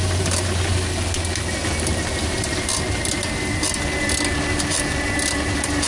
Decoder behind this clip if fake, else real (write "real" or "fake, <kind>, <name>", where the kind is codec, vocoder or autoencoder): real